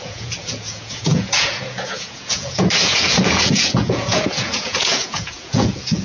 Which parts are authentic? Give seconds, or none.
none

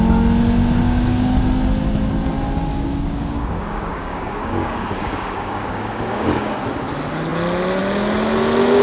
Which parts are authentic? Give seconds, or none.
0.0-0.8; 1.4-2.7; 6.5-8.8

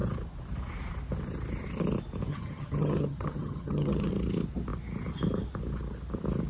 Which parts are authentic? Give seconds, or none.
0.0-2.3; 4.1-6.5

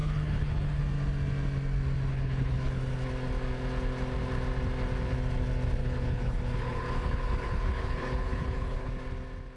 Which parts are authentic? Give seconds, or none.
0.8-2.1; 2.8-5.8; 8.9-9.6

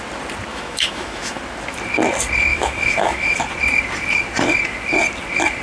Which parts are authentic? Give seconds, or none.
0.0-0.5; 1.4-2.5; 3.4-5.6